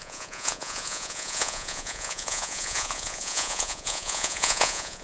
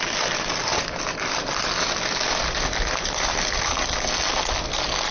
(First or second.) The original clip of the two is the second